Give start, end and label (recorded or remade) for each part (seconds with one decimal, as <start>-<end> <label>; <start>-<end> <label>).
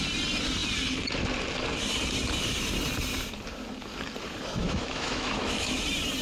0.0-4.6 recorded; 4.6-5.8 remade; 5.8-6.2 recorded